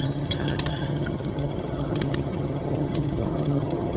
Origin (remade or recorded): remade